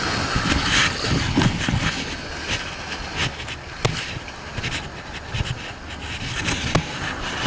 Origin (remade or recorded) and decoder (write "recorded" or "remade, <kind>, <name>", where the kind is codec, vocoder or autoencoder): recorded